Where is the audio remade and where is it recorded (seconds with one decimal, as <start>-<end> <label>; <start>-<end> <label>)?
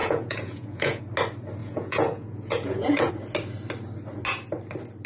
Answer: 0.0-1.0 remade; 1.0-1.6 recorded; 1.6-3.1 remade; 3.1-5.1 recorded